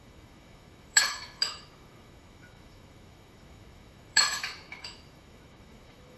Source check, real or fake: fake